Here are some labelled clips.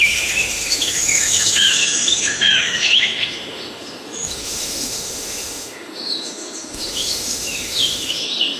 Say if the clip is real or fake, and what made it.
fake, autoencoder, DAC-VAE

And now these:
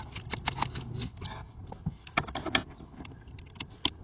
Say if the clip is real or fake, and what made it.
real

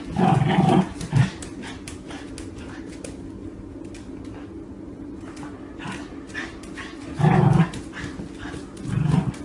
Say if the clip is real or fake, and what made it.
real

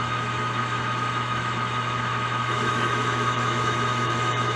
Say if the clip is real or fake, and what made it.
fake, autoencoder, DAC-VAE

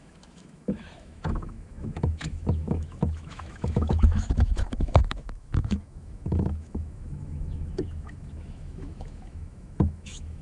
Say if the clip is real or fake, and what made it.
fake, autoencoder, DAC-VAE